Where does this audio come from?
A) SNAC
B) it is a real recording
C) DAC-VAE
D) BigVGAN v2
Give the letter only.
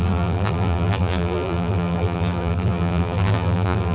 D